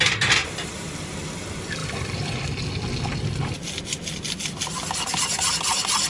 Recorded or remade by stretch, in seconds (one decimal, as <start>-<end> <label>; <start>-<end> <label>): 0.0-0.4 recorded; 0.4-0.9 remade; 0.9-6.1 recorded